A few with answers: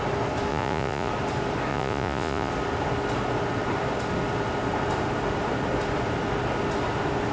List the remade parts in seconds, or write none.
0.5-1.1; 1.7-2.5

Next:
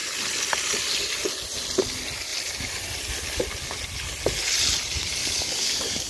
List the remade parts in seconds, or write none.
5.2-6.1

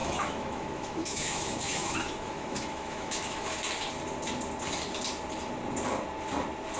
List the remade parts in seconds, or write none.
0.0-3.6

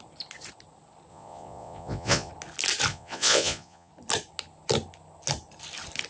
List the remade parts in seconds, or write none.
1.1-2.3; 2.9-3.9

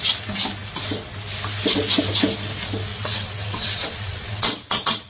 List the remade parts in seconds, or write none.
2.9-5.1

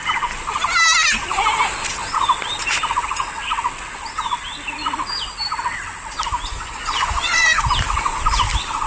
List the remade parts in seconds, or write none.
6.5-7.6

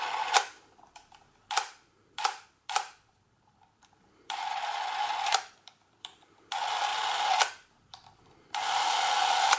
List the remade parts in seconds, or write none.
0.0-9.6